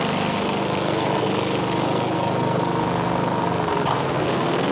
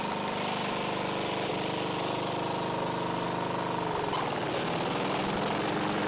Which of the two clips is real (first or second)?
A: second